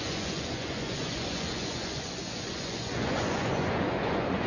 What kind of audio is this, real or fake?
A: fake